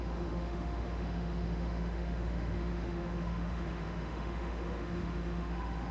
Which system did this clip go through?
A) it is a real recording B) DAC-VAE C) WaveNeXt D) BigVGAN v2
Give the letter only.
B